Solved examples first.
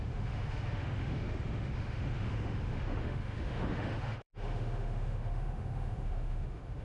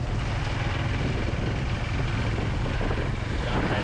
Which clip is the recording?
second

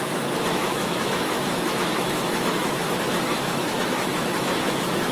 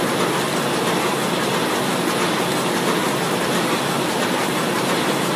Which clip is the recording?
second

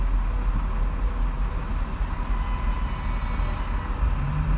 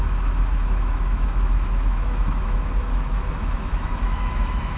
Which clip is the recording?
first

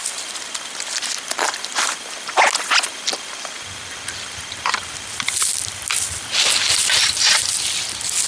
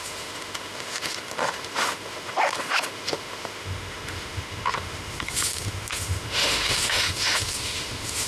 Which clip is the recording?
first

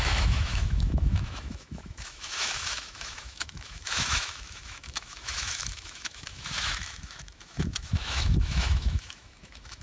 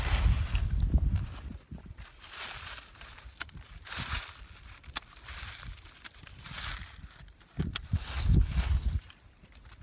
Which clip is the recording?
second